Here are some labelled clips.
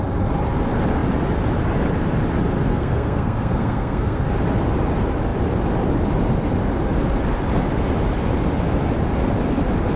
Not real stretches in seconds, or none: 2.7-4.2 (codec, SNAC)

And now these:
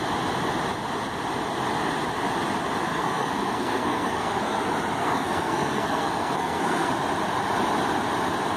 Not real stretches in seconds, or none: 2.9-4.6 (codec, SNAC); 5.0-6.9